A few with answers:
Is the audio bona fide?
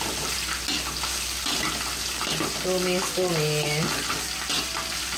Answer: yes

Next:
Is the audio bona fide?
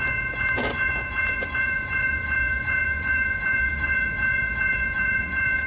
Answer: no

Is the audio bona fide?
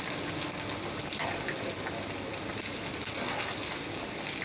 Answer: yes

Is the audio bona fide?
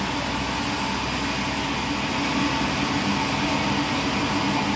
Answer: yes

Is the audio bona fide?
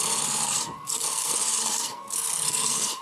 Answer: no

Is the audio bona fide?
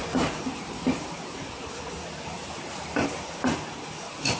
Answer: yes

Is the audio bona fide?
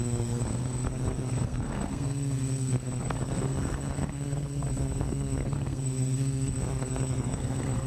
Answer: no